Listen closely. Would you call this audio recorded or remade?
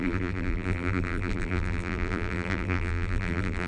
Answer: remade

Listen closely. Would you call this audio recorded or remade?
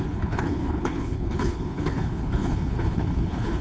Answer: remade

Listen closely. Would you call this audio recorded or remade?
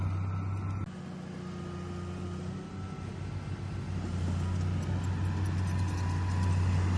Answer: recorded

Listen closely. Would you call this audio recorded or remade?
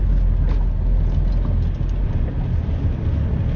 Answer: recorded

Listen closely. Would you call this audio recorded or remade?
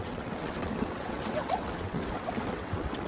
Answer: remade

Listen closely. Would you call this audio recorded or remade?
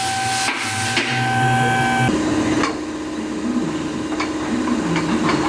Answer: recorded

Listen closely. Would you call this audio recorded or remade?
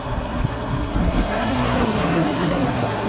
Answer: remade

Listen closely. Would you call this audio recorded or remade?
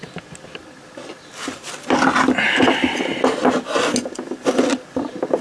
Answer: recorded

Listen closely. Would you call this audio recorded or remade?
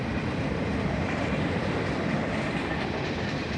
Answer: remade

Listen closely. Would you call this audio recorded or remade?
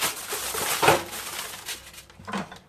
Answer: recorded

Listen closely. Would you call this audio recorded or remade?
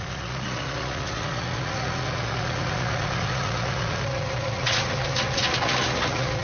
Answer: remade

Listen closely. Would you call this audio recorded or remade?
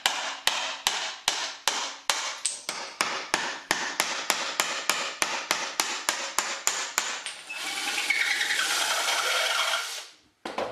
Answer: recorded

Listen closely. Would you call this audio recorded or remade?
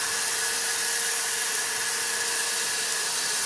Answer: recorded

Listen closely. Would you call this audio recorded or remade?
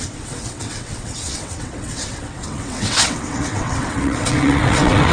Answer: remade